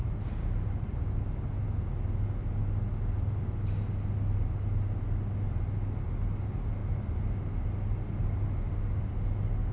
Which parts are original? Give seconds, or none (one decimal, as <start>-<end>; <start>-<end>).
0.0-9.7